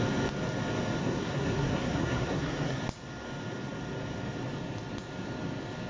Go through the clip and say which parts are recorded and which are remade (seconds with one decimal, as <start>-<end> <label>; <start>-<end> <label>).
0.0-1.0 recorded; 1.0-2.8 remade; 2.8-5.9 recorded